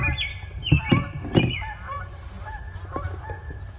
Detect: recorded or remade recorded